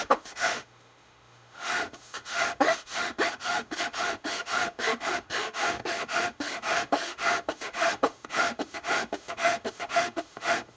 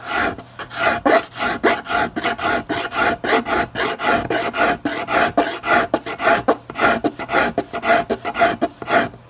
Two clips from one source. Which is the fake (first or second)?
first